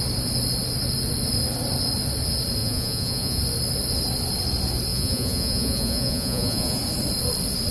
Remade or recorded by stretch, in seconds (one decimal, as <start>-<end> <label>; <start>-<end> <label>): 0.0-2.6 recorded; 2.6-3.4 remade; 3.4-4.9 recorded; 4.9-6.8 remade; 6.8-7.7 recorded